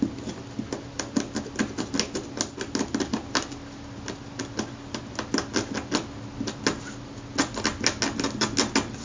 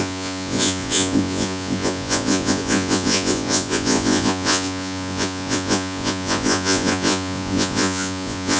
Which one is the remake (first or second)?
second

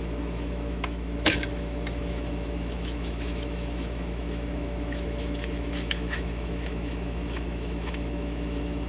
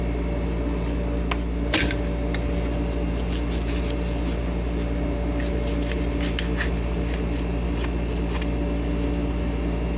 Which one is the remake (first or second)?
first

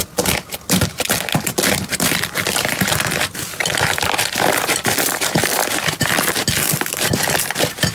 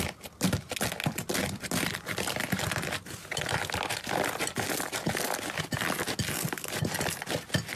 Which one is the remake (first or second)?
first